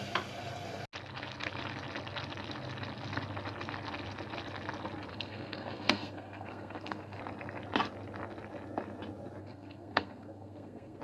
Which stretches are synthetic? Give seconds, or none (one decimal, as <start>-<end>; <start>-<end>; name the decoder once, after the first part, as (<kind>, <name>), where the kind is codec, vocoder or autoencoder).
5.1-7.2 (codec, SNAC); 9.4-11.0